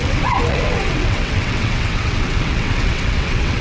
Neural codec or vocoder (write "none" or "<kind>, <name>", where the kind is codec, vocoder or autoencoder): vocoder, WaveNeXt